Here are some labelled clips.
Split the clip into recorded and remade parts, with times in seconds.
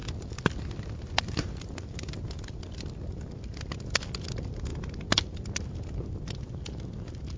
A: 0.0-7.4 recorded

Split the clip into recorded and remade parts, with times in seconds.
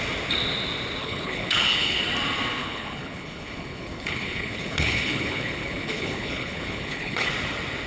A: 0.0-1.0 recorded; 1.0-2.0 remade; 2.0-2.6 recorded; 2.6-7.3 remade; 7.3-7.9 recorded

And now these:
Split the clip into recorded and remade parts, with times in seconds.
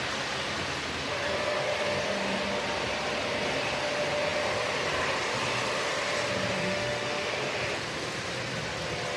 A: 0.0-6.6 recorded; 6.6-7.3 remade; 7.3-9.2 recorded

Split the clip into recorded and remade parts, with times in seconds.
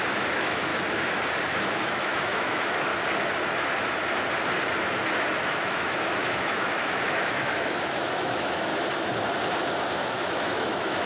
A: 0.0-0.7 remade; 0.7-1.7 recorded; 1.7-2.9 remade; 2.9-5.4 recorded; 5.4-8.7 remade; 8.7-10.1 recorded; 10.1-11.1 remade